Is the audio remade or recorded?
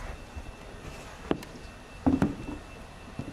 recorded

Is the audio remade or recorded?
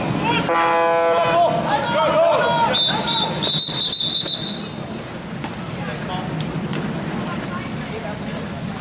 recorded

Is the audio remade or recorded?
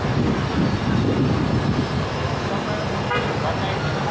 recorded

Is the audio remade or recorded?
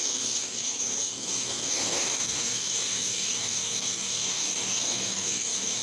remade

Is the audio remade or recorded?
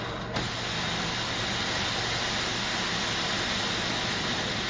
recorded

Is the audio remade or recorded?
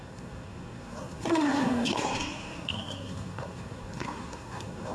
remade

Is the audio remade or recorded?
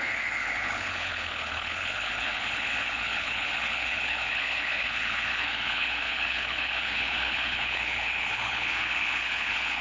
remade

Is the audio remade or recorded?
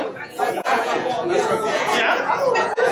remade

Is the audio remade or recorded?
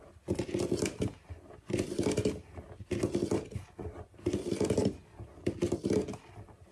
recorded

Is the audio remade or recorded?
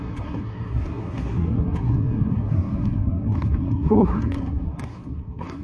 remade